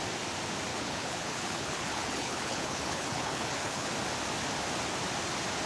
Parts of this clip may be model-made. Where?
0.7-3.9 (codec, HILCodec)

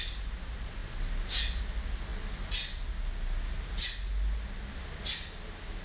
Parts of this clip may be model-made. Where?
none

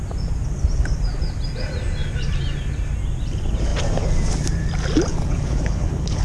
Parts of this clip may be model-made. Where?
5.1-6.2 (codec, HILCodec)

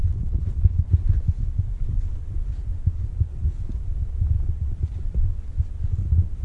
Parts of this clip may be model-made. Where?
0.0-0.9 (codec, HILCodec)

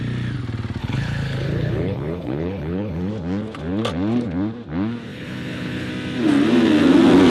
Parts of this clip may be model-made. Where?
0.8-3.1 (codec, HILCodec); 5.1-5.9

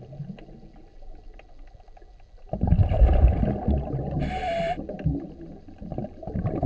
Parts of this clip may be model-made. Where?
none